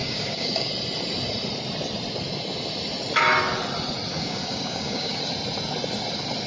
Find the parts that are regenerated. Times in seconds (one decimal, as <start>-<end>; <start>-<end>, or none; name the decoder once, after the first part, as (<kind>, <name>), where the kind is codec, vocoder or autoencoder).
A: 0.0-0.7 (codec, DAC); 4.1-5.2